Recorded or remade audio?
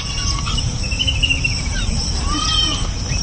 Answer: remade